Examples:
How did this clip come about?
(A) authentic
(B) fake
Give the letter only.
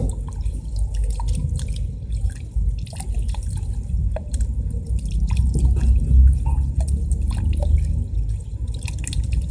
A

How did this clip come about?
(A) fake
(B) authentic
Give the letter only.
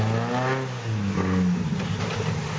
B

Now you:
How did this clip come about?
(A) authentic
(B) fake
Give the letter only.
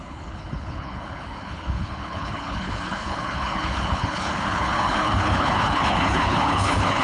B